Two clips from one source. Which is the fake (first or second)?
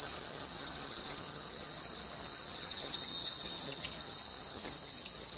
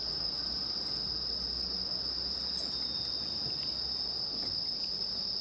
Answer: first